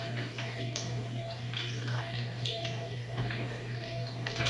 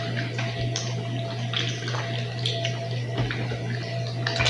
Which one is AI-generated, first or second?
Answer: first